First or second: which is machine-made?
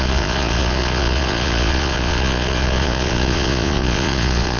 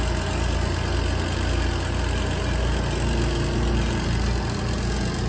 first